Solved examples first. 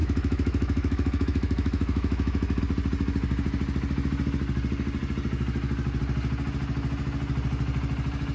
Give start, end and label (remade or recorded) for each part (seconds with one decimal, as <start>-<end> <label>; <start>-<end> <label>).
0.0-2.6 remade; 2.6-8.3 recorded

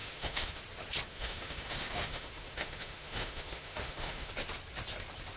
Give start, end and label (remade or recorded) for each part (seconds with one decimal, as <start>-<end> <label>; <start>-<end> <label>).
0.0-0.6 remade; 0.6-1.1 recorded; 1.1-4.3 remade; 4.3-5.4 recorded

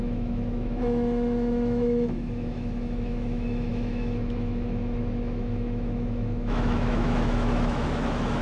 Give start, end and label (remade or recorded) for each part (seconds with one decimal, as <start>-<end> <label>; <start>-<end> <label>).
0.0-8.4 remade